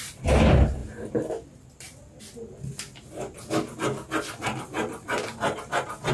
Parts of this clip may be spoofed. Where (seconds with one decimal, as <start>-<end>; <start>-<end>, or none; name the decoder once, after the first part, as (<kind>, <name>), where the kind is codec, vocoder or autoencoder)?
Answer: 0.8-2.2 (vocoder, BigVGAN v2); 4.8-6.1